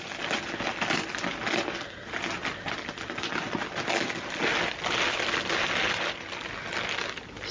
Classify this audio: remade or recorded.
recorded